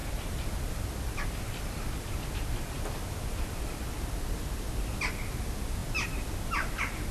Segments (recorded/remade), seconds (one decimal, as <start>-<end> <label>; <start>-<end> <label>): 0.0-3.8 remade; 3.8-7.1 recorded